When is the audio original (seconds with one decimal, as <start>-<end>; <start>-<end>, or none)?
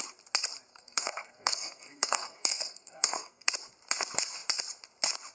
0.0-0.7; 3.5-5.3